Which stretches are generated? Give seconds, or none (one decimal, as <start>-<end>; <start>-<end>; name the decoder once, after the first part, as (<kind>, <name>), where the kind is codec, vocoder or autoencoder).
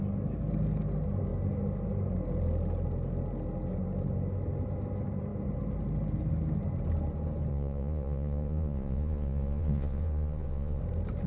7.5-10.8 (vocoder, Vocos)